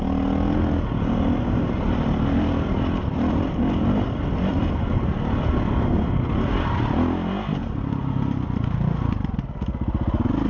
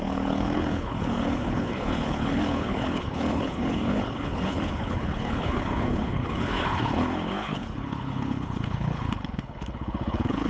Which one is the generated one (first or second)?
second